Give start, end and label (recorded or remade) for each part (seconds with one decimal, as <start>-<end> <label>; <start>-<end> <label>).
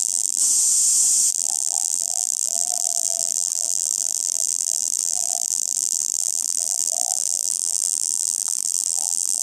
0.0-0.4 remade; 0.4-1.3 recorded; 1.3-9.4 remade